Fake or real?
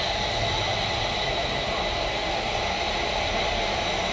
real